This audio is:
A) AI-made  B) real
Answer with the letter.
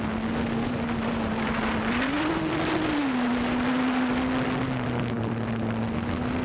B